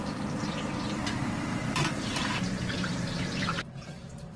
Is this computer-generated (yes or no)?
yes